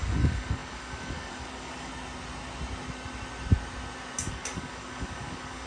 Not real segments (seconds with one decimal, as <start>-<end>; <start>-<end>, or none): 0.0-1.9; 4.3-5.7